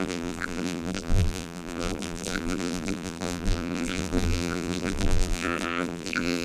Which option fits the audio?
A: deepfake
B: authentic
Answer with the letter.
A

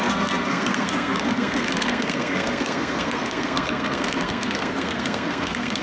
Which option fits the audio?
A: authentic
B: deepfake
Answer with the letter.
B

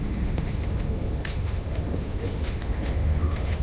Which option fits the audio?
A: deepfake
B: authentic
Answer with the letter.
A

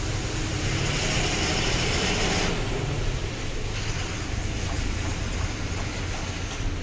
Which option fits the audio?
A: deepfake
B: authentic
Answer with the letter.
B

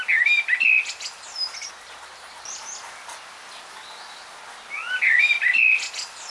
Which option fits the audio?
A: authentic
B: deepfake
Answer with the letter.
A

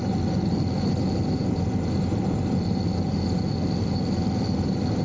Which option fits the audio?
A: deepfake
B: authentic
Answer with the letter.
B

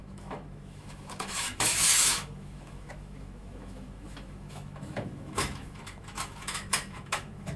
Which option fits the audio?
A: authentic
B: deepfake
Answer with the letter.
B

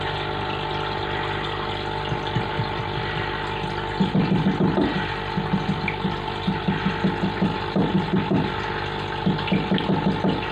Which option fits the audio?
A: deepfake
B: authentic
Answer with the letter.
B